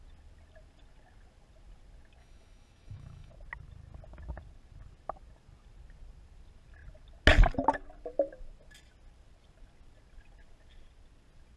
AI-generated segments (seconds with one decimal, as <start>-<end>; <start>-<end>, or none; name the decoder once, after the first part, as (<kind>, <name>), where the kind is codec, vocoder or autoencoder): 2.2-3.3 (autoencoder, DAC-VAE)

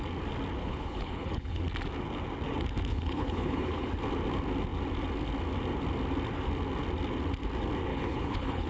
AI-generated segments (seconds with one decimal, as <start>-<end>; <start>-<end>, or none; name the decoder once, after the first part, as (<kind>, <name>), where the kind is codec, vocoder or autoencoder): 0.6-1.6 (codec, HILCodec); 2.9-3.9; 7.9-8.7